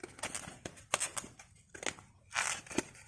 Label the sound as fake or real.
real